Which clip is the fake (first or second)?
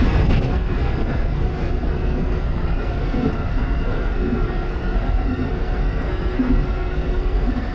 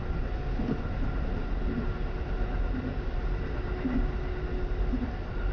first